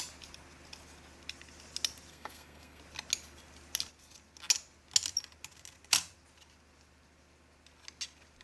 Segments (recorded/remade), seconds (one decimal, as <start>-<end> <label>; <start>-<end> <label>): 0.0-2.1 recorded; 2.1-2.8 remade; 2.8-8.4 recorded